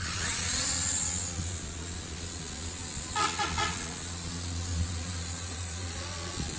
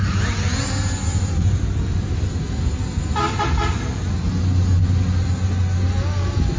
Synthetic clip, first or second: first